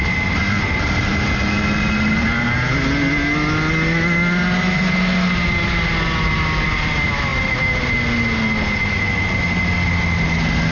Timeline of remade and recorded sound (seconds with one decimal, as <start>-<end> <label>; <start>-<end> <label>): 0.0-7.3 recorded; 7.3-8.0 remade; 8.0-10.7 recorded

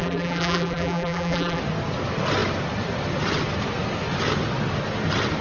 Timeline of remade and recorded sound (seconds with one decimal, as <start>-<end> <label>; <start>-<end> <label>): 0.0-1.6 remade; 1.6-5.4 recorded

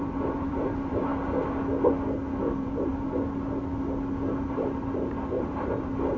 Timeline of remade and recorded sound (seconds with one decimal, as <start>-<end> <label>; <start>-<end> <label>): 0.0-1.1 remade; 1.1-2.4 recorded; 2.4-2.9 remade; 2.9-4.3 recorded; 4.3-6.2 remade